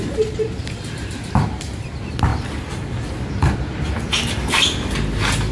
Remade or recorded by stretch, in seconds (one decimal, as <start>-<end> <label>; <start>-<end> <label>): 0.0-5.5 recorded